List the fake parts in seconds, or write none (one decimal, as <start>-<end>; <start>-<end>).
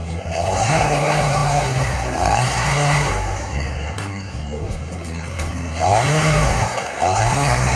0.0-7.8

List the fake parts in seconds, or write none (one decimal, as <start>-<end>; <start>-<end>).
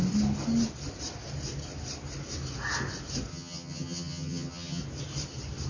3.3-4.8